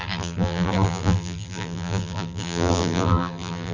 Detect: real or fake fake